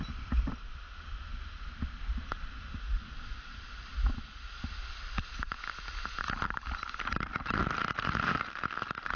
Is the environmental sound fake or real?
real